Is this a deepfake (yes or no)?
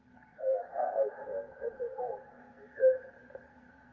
yes